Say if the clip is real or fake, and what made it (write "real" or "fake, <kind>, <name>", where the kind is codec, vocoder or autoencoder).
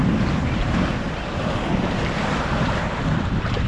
fake, vocoder, BigVGAN v2